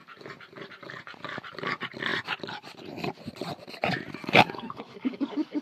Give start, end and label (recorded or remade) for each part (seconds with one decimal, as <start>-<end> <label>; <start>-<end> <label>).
0.0-4.2 recorded; 4.2-5.6 remade